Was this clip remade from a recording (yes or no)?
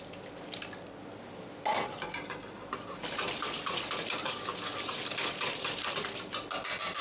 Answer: no